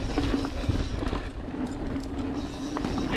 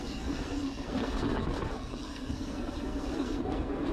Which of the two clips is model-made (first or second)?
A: second